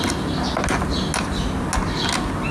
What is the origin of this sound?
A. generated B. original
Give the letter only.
B